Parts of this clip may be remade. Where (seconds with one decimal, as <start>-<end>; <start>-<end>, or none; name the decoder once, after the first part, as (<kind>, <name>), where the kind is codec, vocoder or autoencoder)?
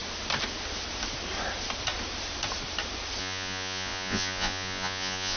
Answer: 3.2-5.4 (vocoder, Vocos)